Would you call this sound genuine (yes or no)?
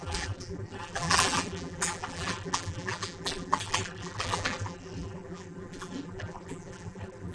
no